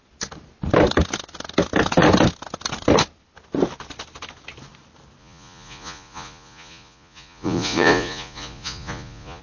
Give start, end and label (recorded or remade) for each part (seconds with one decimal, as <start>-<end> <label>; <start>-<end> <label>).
0.0-5.2 recorded; 5.2-9.4 remade